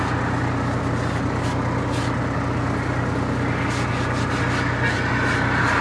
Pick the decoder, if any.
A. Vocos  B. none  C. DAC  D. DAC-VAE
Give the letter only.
B